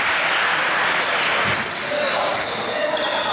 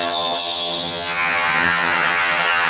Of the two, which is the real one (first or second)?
first